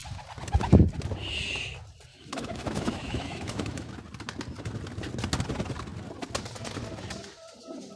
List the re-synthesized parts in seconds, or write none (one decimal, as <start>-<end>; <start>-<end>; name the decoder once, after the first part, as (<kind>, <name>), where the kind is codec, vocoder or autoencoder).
2.1-3.9 (autoencoder, DAC-VAE)